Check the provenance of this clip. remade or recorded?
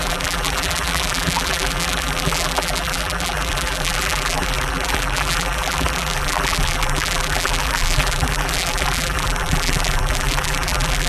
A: remade